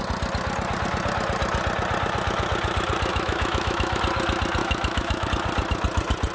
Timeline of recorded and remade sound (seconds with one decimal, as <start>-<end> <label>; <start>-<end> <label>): 0.0-3.1 recorded; 3.1-4.0 remade; 4.0-4.6 recorded; 4.6-5.3 remade; 5.3-6.3 recorded